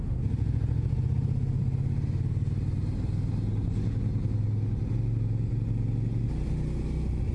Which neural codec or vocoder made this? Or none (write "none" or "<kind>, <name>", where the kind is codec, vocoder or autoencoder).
none